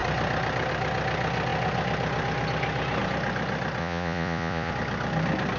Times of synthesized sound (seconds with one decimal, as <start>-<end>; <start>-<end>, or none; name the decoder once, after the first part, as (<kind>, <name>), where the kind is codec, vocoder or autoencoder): 3.8-4.7 (vocoder, Vocos)

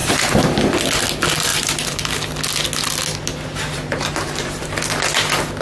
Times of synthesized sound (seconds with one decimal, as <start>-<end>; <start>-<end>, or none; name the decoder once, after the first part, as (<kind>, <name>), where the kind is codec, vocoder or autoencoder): 0.0-0.8 (vocoder, BigVGAN v2); 1.5-2.1; 3.3-4.8

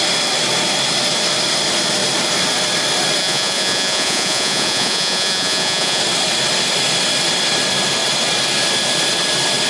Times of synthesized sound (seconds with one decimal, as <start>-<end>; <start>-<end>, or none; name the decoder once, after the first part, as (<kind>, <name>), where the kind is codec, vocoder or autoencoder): 3.2-6.0 (vocoder, Vocos)

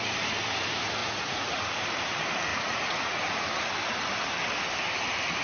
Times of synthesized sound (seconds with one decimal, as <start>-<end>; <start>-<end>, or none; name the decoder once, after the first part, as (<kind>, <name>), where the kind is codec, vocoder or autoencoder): 1.0-1.7 (vocoder, Vocos); 2.5-3.5